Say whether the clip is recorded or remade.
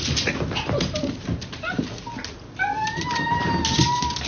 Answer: recorded